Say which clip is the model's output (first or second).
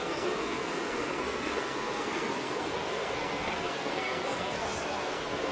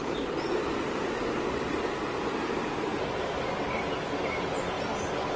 first